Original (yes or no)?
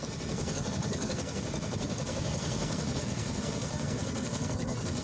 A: no